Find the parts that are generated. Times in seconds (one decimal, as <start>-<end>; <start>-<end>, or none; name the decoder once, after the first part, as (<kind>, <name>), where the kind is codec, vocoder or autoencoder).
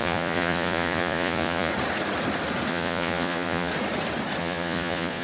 0.0-1.7 (vocoder, Vocos); 2.7-3.7; 4.4-5.2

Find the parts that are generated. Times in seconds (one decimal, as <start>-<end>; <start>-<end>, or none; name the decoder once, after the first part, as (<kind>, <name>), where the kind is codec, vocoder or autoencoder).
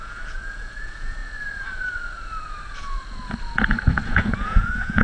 0.0-5.0 (vocoder, Vocos)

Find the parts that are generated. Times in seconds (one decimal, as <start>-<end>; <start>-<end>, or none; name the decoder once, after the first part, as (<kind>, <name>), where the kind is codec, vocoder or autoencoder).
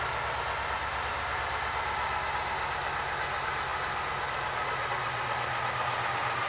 none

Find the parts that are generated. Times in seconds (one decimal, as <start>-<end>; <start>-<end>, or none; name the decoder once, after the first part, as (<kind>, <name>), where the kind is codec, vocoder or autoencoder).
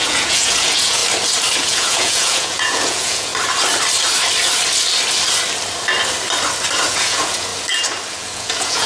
0.0-1.0 (vocoder, Vocos); 1.6-3.3; 6.9-7.5; 8.1-8.9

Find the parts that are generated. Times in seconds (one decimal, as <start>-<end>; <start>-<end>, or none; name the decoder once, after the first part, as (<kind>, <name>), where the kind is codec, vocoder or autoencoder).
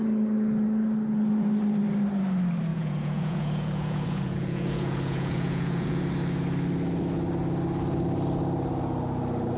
2.7-6.0 (vocoder, Vocos)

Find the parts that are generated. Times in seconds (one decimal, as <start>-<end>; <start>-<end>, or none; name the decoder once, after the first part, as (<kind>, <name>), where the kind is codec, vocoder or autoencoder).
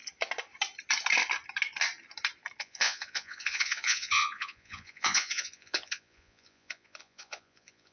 2.6-7.9 (vocoder, Vocos)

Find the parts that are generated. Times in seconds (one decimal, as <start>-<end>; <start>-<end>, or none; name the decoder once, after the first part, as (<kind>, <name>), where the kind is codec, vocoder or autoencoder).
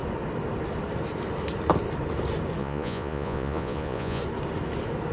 2.6-4.2 (vocoder, Vocos)